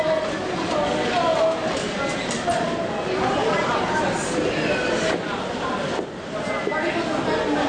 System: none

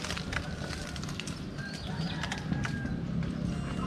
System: none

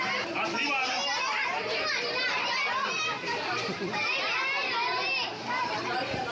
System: vocoder, BigVGAN v2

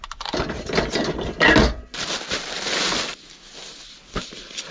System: none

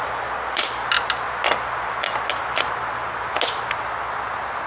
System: none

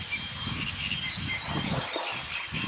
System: none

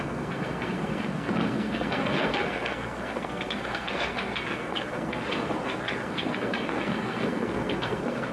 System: codec, SNAC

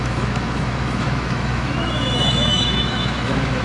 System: autoencoder, DAC-VAE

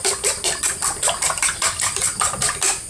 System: none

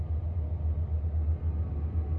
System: none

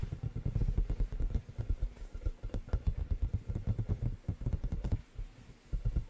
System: none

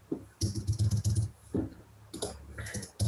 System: none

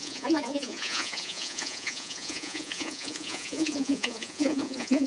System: vocoder, Vocos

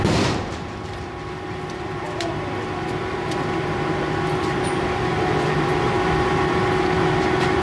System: vocoder, BigVGAN v2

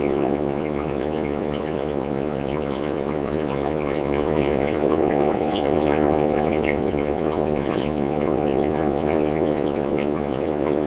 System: vocoder, Vocos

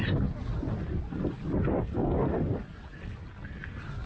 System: none